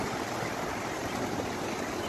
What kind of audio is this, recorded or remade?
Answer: recorded